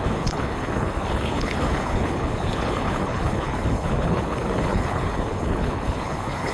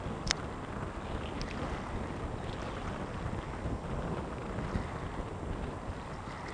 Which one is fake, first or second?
first